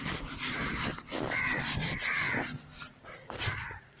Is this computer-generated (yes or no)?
no